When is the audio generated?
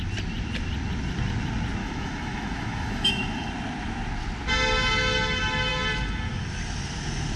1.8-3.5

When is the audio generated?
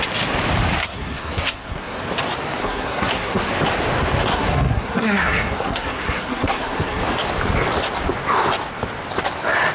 0.8-2.0; 2.6-3.5; 4.3-7.0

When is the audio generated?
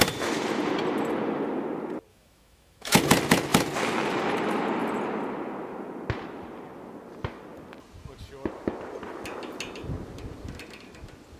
2.1-3.0